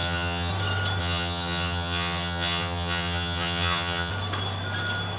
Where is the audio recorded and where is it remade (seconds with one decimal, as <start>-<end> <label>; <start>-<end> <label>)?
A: 0.0-0.5 remade; 0.5-1.0 recorded; 1.0-4.1 remade; 4.1-5.2 recorded